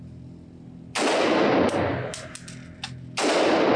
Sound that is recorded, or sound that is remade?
recorded